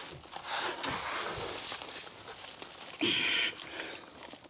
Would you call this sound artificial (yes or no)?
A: no